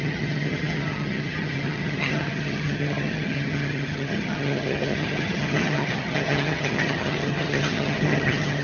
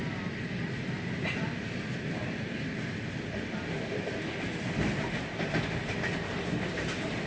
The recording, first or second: second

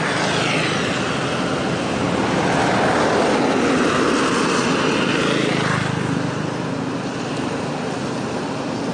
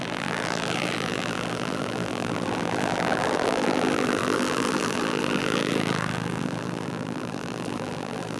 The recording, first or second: first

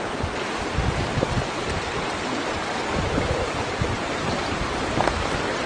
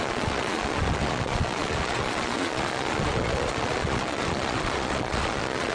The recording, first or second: first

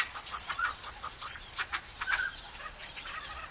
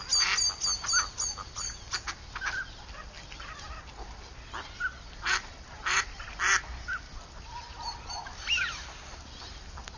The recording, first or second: second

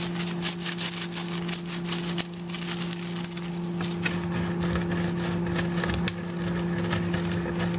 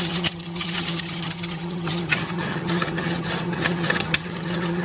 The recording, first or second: first